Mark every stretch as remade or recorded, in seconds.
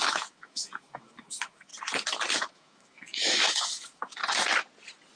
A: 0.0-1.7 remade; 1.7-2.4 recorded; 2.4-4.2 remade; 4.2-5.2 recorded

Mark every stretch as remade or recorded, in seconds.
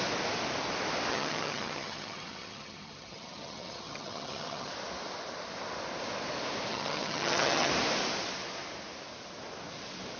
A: 0.0-1.1 recorded; 1.1-4.7 remade; 4.7-6.7 recorded; 6.7-7.7 remade; 7.7-10.2 recorded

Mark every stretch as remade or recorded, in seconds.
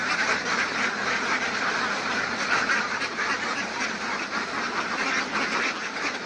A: 0.0-3.8 remade; 3.8-6.3 recorded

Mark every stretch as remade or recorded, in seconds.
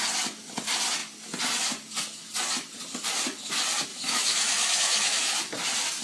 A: 0.0-3.9 recorded; 3.9-5.4 remade; 5.4-6.0 recorded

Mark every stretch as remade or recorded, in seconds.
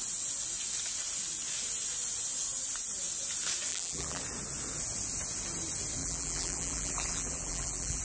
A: 0.0-3.7 recorded; 3.7-4.2 remade; 4.2-6.0 recorded; 6.0-8.0 remade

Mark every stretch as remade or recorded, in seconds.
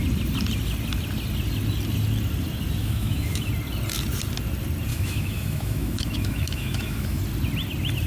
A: 0.0-2.8 recorded; 2.8-3.5 remade; 3.5-4.9 recorded; 4.9-7.2 remade; 7.2-8.1 recorded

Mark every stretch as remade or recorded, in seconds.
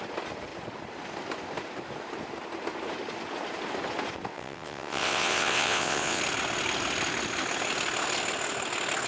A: 0.0-4.3 recorded; 4.3-6.2 remade; 6.2-9.1 recorded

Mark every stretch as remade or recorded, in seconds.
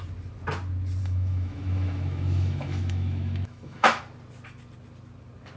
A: 0.0-1.0 recorded; 1.0-4.0 remade; 4.0-5.6 recorded